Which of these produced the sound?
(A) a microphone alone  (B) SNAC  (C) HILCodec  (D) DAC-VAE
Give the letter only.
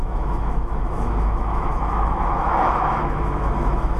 D